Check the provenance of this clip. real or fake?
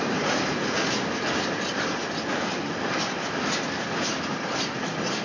real